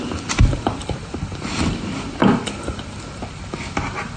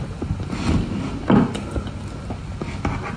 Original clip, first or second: second